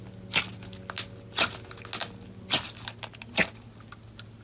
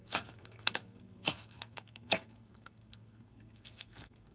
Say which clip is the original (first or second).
first